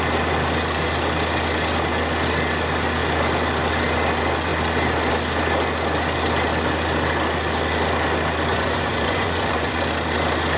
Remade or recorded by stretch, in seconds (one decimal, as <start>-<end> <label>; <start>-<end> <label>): 0.0-8.5 recorded; 8.5-9.8 remade; 9.8-10.6 recorded